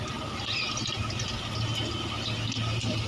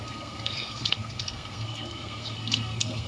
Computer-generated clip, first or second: second